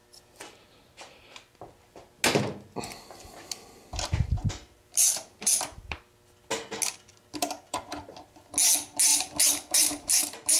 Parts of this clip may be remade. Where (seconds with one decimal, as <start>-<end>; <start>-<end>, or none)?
3.9-6.0; 7.1-8.5; 9.1-10.6

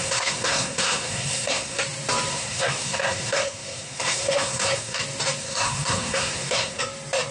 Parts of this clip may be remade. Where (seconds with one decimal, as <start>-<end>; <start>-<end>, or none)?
0.0-1.8; 2.3-5.0; 5.4-6.8

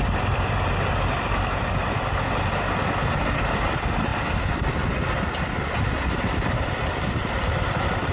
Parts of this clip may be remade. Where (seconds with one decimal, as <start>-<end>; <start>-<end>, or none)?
none

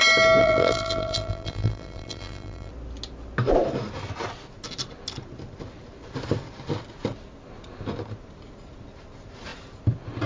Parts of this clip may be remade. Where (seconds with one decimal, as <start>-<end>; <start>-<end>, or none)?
0.4-2.7

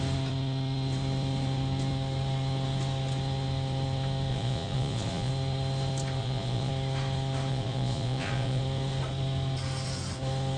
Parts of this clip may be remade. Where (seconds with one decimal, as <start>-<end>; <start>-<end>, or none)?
4.3-5.3; 6.2-6.7; 7.5-8.6

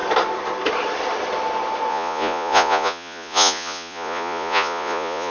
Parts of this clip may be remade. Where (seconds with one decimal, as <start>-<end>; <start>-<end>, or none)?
1.9-5.3

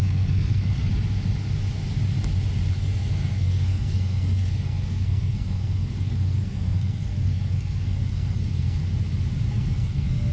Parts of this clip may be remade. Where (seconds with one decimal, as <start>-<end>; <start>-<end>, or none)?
0.0-0.9; 2.8-8.8; 9.5-10.3